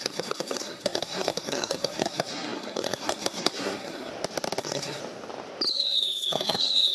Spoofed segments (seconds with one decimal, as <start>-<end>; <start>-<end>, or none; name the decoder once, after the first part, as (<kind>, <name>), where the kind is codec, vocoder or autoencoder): 0.0-4.1 (codec, SNAC); 4.6-5.0; 5.7-6.9